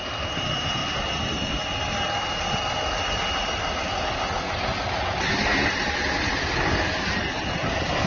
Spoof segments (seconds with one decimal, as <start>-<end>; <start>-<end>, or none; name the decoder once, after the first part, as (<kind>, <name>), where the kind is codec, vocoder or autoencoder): none